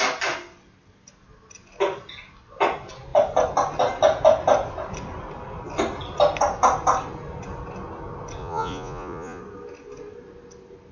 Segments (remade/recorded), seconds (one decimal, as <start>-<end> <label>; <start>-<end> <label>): 0.0-8.4 recorded; 8.4-9.4 remade; 9.4-10.9 recorded